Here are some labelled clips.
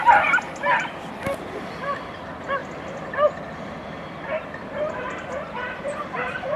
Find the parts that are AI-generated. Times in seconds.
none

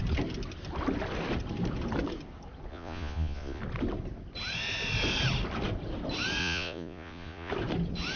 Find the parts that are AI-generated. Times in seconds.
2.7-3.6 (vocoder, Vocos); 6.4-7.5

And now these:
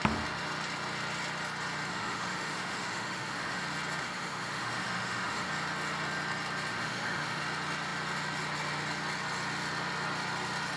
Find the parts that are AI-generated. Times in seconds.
1.9-3.6 (autoencoder, DAC-VAE); 4.0-5.5; 6.7-7.4

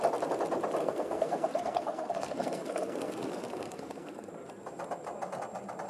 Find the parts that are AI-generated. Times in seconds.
0.8-4.3 (codec, SNAC)

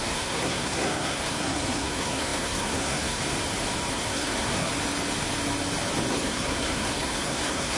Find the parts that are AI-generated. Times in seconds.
0.0-3.2 (codec, SNAC); 3.9-4.7; 6.1-7.8

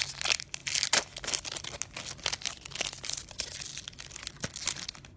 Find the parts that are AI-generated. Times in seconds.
none

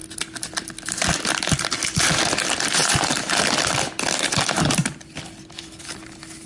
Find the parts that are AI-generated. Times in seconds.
0.0-1.7 (vocoder, BigVGAN v2); 2.8-3.4; 4.8-5.9

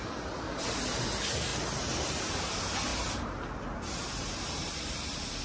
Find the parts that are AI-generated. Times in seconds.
none